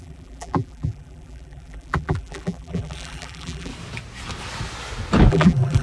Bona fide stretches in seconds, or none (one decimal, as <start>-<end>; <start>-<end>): 3.7-5.3